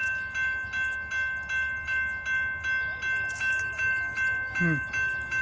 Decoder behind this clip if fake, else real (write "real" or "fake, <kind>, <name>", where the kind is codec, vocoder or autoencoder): real